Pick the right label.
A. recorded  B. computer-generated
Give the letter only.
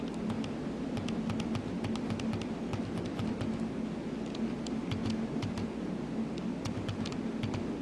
A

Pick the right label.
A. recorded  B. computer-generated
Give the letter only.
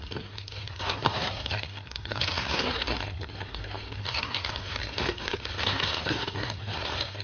B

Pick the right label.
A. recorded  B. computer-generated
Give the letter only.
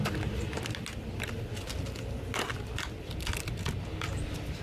A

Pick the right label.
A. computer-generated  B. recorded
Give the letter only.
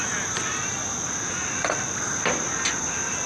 B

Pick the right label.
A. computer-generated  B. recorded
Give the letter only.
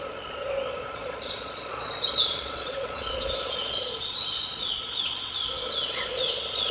A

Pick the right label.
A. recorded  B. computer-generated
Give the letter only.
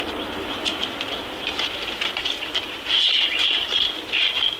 A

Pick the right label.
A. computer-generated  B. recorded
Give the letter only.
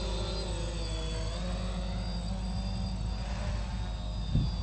B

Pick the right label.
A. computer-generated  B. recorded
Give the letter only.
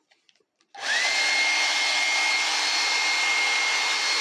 B